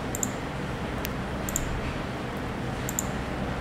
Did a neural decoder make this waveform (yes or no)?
no